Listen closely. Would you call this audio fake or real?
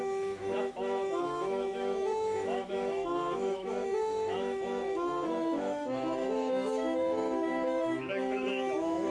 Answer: fake